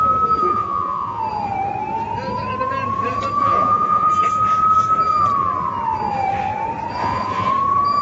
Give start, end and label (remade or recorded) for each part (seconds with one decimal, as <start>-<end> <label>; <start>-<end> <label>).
0.0-0.4 recorded; 0.4-1.2 remade; 1.2-3.4 recorded; 3.4-4.1 remade; 4.1-7.0 recorded; 7.0-7.5 remade; 7.5-8.0 recorded